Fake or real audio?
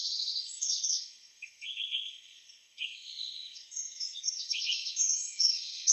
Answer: fake